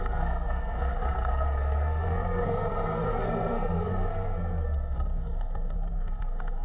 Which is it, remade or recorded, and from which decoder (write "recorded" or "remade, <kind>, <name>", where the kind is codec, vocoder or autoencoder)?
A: remade, codec, SNAC